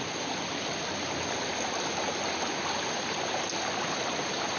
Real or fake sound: real